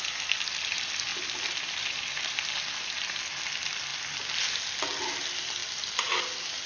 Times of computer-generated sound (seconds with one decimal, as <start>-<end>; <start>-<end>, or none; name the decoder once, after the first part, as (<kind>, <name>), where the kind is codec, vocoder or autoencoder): none